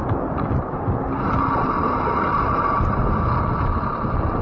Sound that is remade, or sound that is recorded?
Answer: recorded